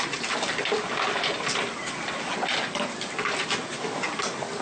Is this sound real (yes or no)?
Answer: yes